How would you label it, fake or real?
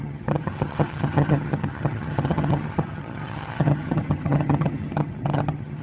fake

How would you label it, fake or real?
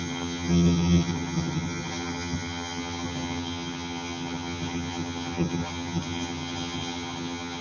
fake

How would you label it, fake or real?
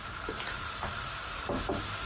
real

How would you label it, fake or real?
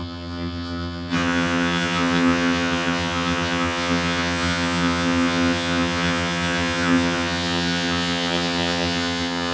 fake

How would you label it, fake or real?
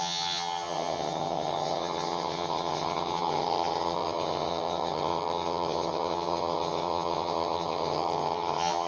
fake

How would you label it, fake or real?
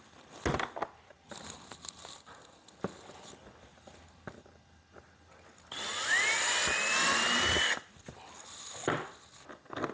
real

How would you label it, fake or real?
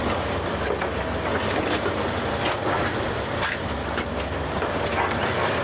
real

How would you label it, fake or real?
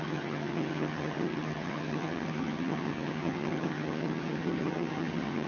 fake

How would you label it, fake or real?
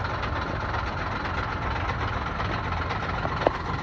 real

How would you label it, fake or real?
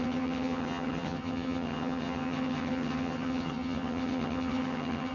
fake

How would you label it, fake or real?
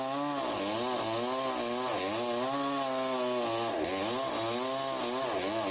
real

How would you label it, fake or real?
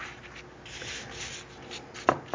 real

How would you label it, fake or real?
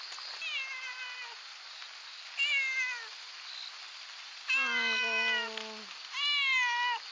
real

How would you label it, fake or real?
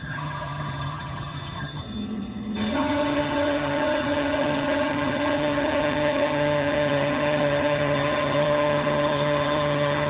fake